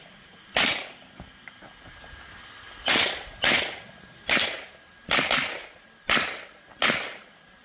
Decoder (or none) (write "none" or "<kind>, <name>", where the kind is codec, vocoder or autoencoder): none